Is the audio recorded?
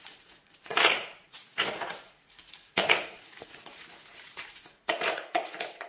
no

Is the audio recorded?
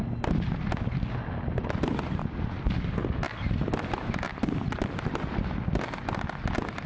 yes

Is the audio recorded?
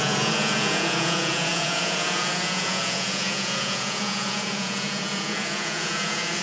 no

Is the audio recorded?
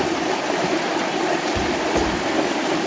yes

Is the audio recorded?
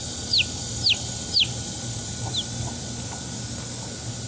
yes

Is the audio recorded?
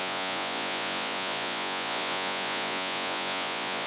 no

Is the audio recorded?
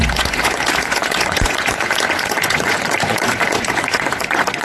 no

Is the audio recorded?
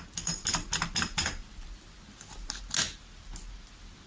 yes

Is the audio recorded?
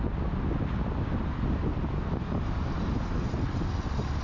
yes